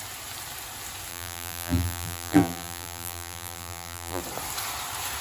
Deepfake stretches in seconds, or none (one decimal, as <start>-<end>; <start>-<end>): 1.1-4.2